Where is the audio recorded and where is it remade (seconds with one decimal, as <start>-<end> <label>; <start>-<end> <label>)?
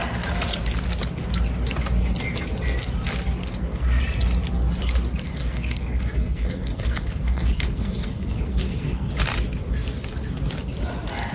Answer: 0.0-3.4 recorded; 3.4-4.0 remade; 4.0-5.3 recorded; 5.3-9.1 remade; 9.1-11.3 recorded